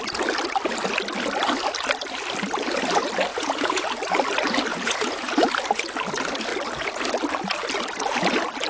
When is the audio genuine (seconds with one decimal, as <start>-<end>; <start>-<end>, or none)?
0.0-3.3; 3.8-4.7; 5.3-8.7